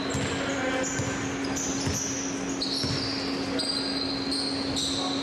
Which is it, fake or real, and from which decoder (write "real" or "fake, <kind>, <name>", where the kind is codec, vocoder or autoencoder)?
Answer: real